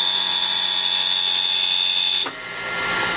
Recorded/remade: recorded